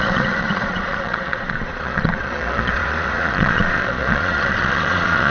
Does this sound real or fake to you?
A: fake